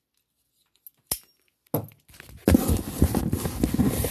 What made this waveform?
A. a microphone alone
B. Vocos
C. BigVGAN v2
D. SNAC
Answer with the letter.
A